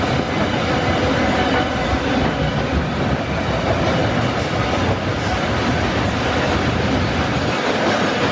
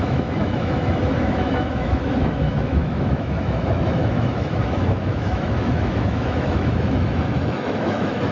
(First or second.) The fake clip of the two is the second